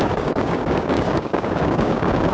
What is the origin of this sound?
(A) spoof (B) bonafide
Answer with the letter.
A